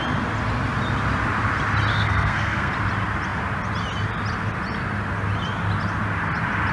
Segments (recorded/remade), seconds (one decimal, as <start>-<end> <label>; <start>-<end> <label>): 0.0-1.9 recorded; 1.9-2.7 remade; 2.7-6.7 recorded